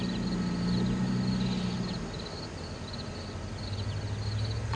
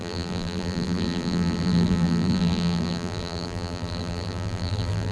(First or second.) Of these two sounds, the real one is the first